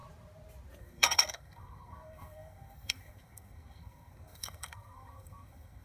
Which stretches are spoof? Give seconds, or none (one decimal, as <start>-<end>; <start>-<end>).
0.8-5.8